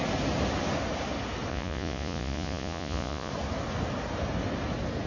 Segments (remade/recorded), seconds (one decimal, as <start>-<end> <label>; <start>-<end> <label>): 0.0-1.5 recorded; 1.5-3.3 remade; 3.3-5.1 recorded